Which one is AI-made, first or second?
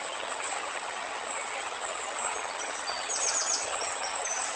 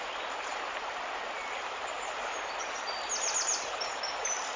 first